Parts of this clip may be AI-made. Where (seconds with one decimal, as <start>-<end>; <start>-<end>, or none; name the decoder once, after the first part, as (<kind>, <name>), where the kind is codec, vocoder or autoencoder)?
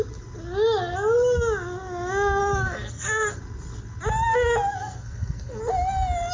2.4-3.4 (codec, SNAC); 4.8-5.6